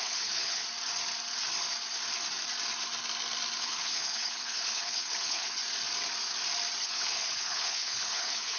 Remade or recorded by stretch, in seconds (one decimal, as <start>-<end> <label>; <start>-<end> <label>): 0.0-0.6 remade; 0.6-3.6 recorded; 3.6-5.6 remade; 5.6-6.8 recorded; 6.8-8.6 remade

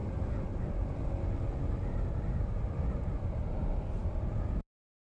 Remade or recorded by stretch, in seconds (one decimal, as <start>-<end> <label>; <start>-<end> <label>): 0.0-5.0 recorded

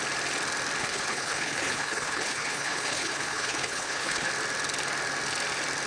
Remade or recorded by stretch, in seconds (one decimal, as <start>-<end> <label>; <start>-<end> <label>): 0.0-0.8 recorded; 0.8-4.3 remade; 4.3-5.9 recorded

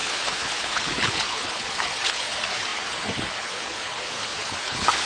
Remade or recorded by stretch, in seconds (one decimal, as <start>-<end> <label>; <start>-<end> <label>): 0.0-5.1 remade

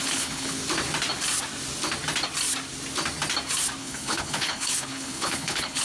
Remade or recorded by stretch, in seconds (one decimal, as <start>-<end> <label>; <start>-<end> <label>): 0.0-0.6 remade; 0.6-3.8 recorded; 3.8-5.8 remade

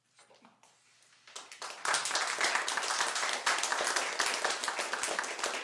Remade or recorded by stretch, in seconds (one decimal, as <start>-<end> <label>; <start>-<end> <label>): 0.0-5.6 recorded

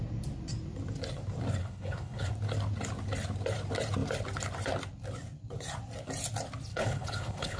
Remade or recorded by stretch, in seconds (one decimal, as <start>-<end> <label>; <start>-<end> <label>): 0.0-1.6 recorded; 1.6-2.3 remade; 2.3-6.7 recorded; 6.7-7.6 remade